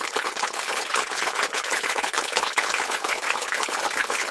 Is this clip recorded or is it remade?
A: remade